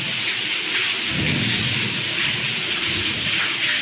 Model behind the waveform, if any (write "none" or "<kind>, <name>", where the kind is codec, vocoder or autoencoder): vocoder, Vocos